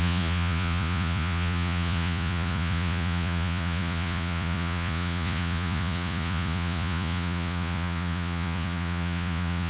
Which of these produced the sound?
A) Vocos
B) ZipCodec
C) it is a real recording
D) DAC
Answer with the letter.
A